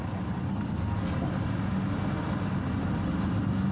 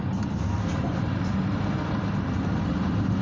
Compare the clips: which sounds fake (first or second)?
second